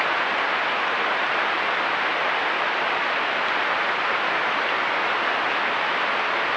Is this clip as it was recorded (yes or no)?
yes